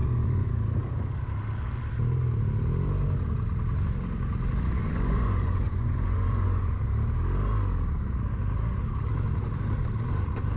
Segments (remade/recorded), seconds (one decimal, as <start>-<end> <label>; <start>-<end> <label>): 0.0-0.5 remade; 0.5-4.8 recorded; 4.8-6.8 remade; 6.8-10.6 recorded